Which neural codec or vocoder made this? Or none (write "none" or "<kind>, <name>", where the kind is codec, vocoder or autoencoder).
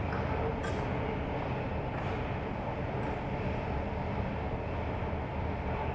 none